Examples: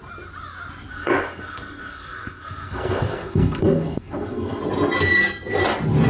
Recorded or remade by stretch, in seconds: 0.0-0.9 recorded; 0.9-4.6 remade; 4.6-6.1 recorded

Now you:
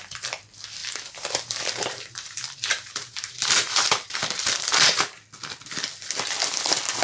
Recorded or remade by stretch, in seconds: 0.0-0.8 recorded; 0.8-5.0 remade; 5.0-7.0 recorded

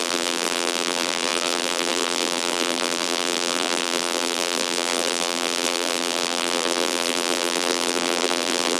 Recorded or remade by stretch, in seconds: 0.0-8.8 remade